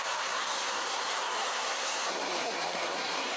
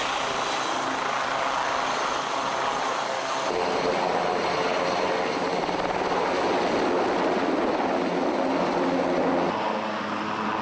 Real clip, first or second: second